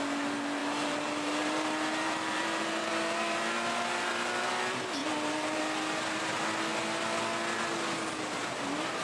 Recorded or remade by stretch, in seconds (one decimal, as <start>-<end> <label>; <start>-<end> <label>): 0.0-0.6 recorded; 0.6-4.5 remade; 4.5-5.0 recorded; 5.0-5.6 remade; 5.6-9.0 recorded